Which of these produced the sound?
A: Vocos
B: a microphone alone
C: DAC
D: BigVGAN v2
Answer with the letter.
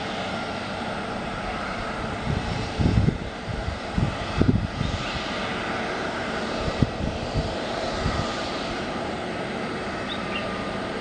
D